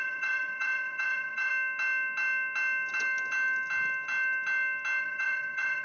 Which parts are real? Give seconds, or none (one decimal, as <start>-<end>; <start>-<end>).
1.5-5.0